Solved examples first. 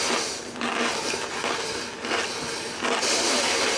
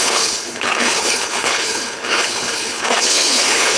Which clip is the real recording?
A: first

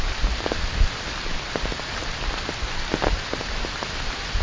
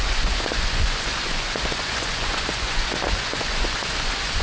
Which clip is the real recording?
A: first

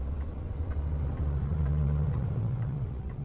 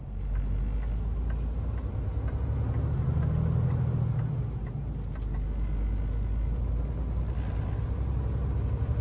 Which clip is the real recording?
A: second